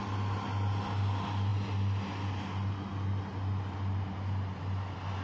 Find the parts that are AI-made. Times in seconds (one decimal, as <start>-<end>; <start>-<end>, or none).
none